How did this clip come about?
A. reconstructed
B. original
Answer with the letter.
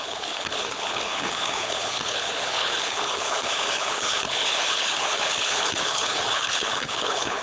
A